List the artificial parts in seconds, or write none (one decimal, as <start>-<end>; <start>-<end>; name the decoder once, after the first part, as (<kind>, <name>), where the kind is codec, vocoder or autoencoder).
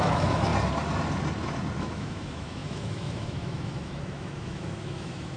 0.0-0.5 (autoencoder, DAC-VAE); 1.8-5.4